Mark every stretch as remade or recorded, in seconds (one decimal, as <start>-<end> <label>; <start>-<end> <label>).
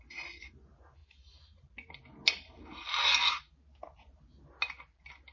0.0-5.3 recorded